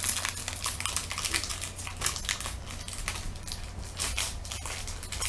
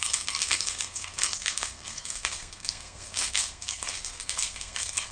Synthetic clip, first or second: second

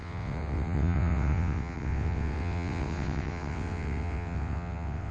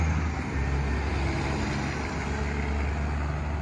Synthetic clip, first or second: first